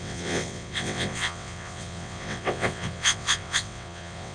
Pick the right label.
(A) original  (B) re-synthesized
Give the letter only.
B